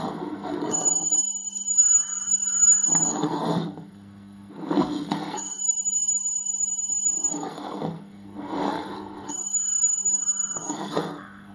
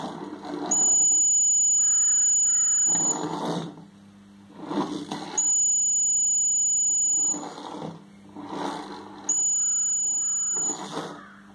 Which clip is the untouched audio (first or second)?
second